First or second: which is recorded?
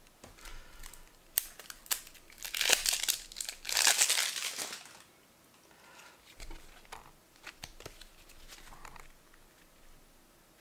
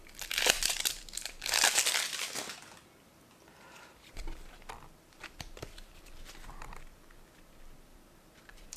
first